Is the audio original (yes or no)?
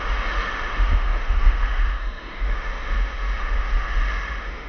no